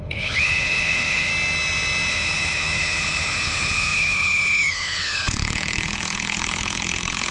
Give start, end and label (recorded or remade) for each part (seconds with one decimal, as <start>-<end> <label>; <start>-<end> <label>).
0.0-1.3 remade; 1.3-2.1 recorded; 2.1-7.3 remade